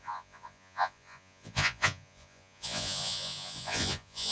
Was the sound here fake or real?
fake